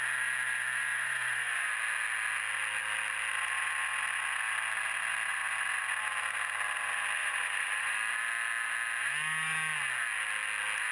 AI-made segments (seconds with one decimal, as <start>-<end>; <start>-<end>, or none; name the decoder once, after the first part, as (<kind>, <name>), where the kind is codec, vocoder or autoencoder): 0.9-1.7 (vocoder, Vocos); 7.2-8.1